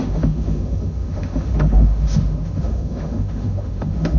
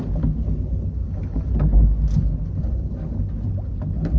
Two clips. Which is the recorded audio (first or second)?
second